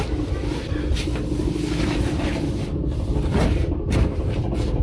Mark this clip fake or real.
fake